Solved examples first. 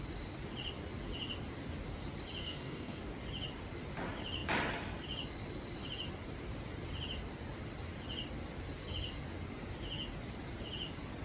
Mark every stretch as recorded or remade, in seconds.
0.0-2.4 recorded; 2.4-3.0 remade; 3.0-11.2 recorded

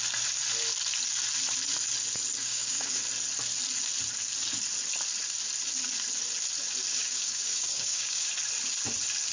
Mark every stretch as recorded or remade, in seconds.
0.0-2.4 recorded; 2.4-3.0 remade; 3.0-6.9 recorded; 6.9-8.3 remade; 8.3-9.3 recorded